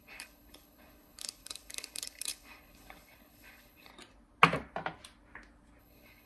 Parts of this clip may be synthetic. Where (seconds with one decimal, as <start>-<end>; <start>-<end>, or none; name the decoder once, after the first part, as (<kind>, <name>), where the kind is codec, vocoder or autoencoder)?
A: 0.0-3.9 (codec, HILCodec); 5.8-6.3